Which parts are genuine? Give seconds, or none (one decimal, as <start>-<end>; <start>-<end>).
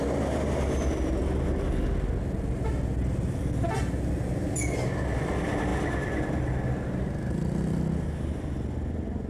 0.0-9.3